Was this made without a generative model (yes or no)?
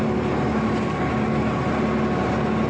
yes